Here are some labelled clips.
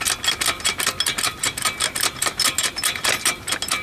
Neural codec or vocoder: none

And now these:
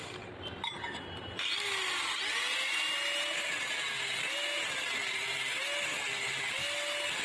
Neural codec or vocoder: none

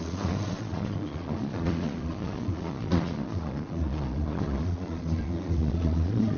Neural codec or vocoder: vocoder, Vocos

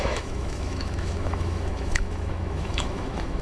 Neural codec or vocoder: autoencoder, DAC-VAE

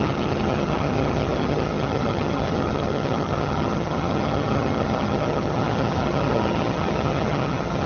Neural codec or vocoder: vocoder, HiFi-GAN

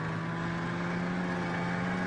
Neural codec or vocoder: none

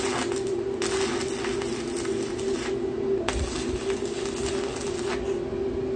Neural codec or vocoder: none